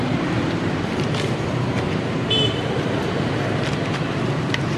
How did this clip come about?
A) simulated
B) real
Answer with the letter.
A